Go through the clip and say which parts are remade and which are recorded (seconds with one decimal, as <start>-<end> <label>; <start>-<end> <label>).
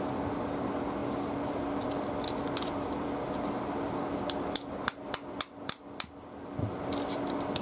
0.0-7.6 recorded